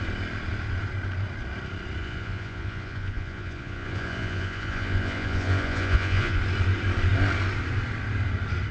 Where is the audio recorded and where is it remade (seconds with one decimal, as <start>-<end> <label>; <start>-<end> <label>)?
0.0-2.0 recorded; 2.0-6.4 remade; 6.4-8.7 recorded